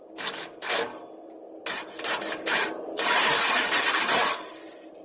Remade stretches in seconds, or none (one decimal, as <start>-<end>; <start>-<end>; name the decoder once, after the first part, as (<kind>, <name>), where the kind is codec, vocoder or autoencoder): none